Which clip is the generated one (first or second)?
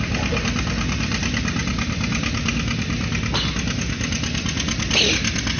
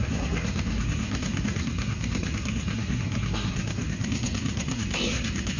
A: second